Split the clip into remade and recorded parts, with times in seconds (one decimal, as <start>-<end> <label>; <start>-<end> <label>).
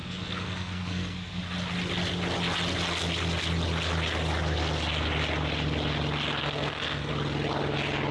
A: 0.0-1.4 remade; 1.4-6.4 recorded; 6.4-7.1 remade; 7.1-8.1 recorded